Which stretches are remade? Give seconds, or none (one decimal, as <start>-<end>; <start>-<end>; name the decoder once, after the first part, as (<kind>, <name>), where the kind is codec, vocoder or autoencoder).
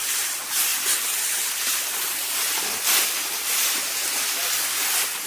none